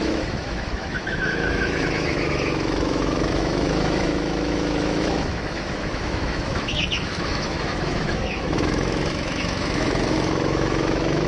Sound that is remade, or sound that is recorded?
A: remade